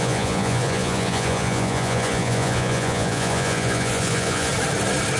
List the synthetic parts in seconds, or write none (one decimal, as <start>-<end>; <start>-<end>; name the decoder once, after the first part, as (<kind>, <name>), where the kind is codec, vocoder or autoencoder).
0.0-4.5 (vocoder, Vocos)